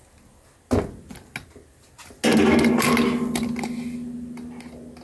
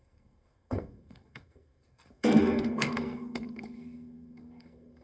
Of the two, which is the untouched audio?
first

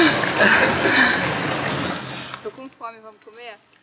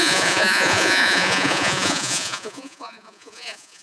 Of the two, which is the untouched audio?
first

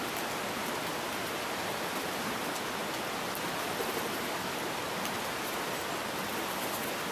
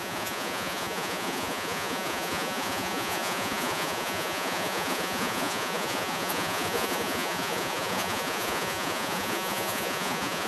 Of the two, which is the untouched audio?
first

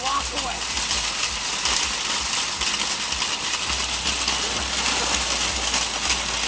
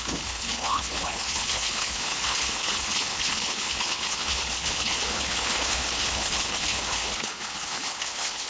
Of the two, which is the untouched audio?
first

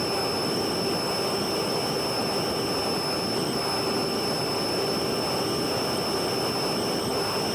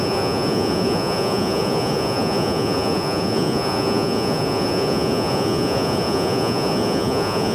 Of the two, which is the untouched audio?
first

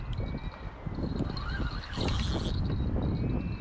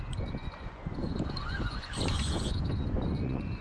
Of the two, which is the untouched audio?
first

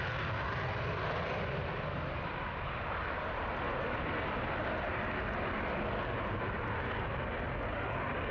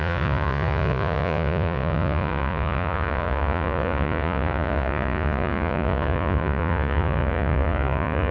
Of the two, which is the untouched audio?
first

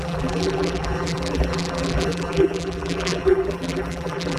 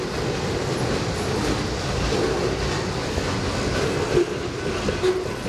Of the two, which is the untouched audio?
second